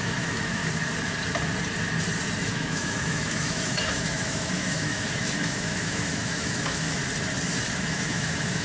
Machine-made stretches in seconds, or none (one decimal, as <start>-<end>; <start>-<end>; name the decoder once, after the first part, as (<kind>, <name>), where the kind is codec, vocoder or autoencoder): 0.0-0.6 (autoencoder, DAC-VAE); 2.4-7.0; 7.9-8.6